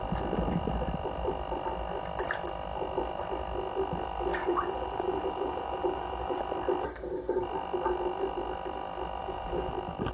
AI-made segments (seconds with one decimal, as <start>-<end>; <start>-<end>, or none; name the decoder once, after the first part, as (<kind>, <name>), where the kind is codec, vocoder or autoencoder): 4.4-6.4 (vocoder, BigVGAN v2); 9.2-9.7